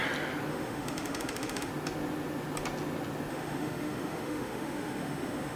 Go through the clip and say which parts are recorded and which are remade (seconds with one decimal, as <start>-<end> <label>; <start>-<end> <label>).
0.0-0.5 recorded; 0.5-1.7 remade; 1.7-3.3 recorded; 3.3-5.5 remade